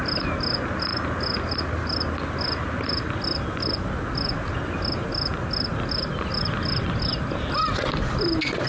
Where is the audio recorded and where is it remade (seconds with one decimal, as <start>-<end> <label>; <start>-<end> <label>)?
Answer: 0.0-8.7 recorded